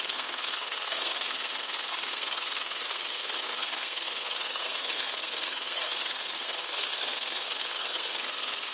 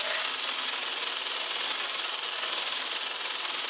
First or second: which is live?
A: second